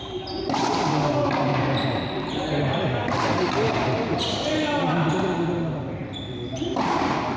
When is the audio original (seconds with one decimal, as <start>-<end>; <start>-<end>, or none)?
0.0-7.4